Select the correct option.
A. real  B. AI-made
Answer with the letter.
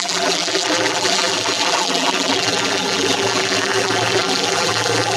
B